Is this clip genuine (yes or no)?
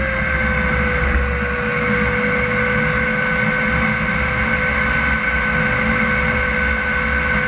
yes